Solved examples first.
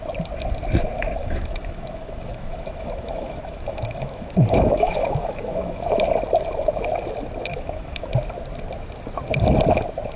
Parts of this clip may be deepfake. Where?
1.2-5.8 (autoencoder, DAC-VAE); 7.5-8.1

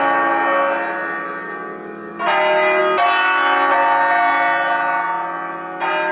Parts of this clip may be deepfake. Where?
none

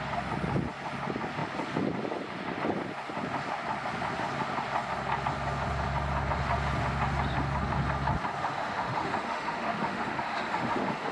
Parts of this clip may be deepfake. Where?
8.4-11.1 (autoencoder, DAC-VAE)

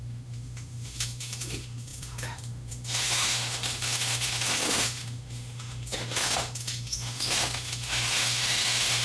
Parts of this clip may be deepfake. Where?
0.0-9.0 (autoencoder, DAC-VAE)